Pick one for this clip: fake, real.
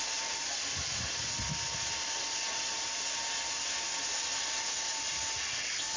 real